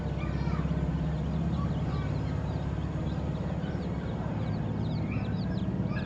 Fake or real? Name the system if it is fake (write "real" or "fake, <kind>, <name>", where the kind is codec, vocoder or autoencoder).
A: real